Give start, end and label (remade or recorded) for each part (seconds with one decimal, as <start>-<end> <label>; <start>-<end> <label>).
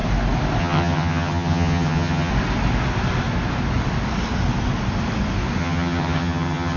0.0-0.6 recorded; 0.6-2.3 remade; 2.3-5.6 recorded; 5.6-6.8 remade